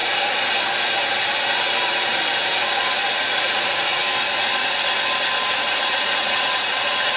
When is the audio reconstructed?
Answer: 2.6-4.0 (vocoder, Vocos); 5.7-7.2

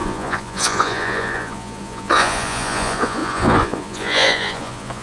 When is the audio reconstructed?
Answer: 0.0-5.0 (vocoder, Vocos)

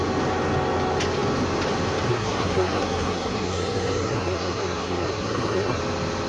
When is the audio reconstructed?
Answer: 2.1-5.8 (codec, SNAC)

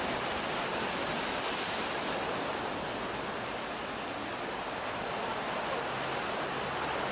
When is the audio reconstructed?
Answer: none

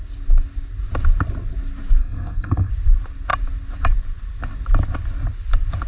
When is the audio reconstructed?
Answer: 2.0-2.7 (codec, SNAC)

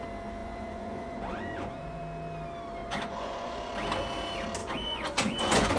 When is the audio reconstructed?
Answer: 0.4-2.0 (vocoder, Vocos); 2.8-3.7; 4.6-5.8